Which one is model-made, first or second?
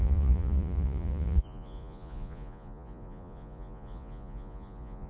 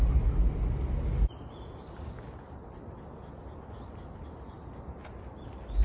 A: first